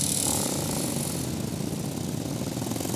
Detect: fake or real real